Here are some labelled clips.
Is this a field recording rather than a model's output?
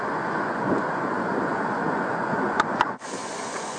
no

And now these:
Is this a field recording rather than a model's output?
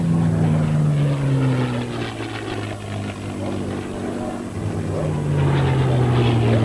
yes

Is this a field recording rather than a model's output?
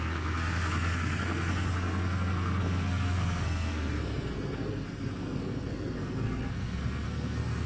no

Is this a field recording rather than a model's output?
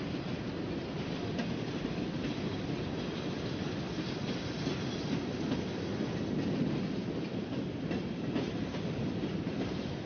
yes